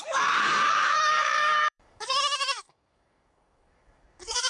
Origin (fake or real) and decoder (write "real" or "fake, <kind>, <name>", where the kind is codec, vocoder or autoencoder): fake, codec, DAC